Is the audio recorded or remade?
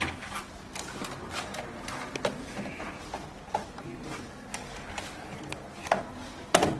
recorded